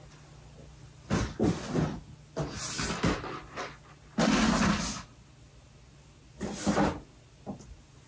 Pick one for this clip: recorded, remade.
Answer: recorded